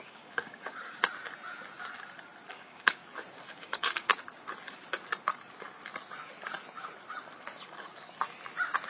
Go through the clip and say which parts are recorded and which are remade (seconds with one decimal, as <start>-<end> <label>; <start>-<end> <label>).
0.0-1.0 remade; 1.0-2.5 recorded; 2.5-3.0 remade; 3.0-3.6 recorded; 3.6-4.1 remade; 4.1-8.9 recorded